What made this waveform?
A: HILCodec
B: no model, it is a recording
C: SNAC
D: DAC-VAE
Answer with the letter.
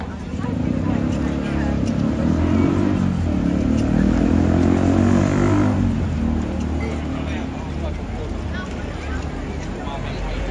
B